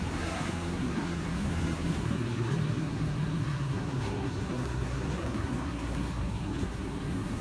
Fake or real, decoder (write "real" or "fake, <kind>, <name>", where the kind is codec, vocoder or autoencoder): fake, codec, SNAC